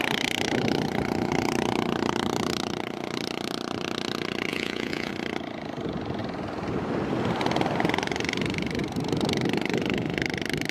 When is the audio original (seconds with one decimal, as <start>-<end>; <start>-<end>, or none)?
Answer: 0.0-4.5; 5.1-10.7